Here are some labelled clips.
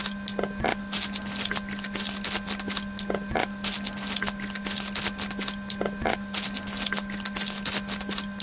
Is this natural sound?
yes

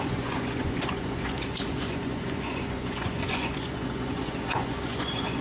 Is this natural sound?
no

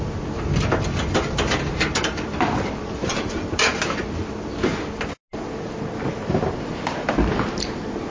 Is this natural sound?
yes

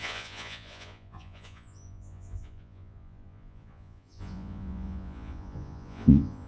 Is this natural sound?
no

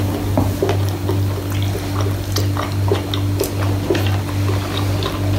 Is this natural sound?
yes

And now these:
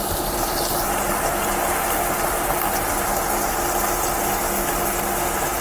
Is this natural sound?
yes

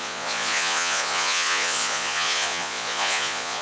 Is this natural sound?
no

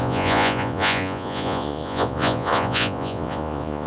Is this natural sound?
no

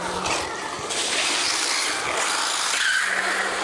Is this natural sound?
yes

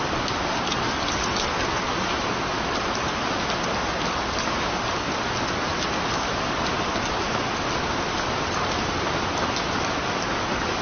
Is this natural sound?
yes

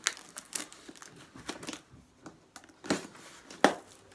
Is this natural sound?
yes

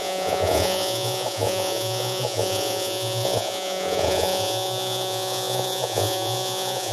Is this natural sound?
no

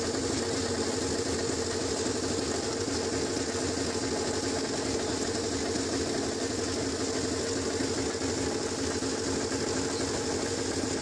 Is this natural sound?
yes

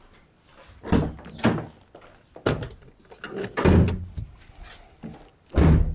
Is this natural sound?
yes